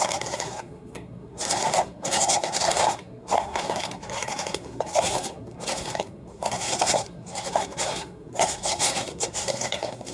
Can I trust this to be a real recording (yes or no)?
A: no